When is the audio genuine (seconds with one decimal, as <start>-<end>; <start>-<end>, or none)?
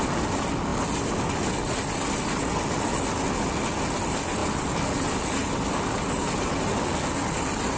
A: 0.0-7.8